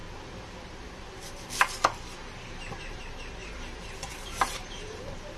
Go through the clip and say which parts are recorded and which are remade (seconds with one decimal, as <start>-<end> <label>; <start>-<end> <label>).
0.0-2.1 recorded; 2.1-3.0 remade; 3.0-3.4 recorded; 3.4-5.0 remade; 5.0-5.4 recorded